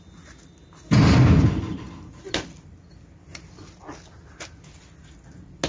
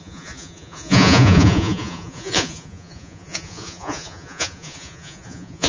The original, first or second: first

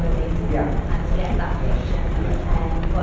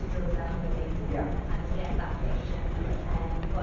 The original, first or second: first